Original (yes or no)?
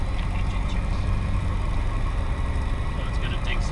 no